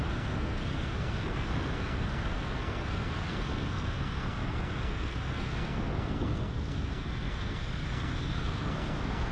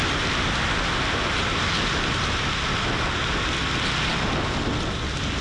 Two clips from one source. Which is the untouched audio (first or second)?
second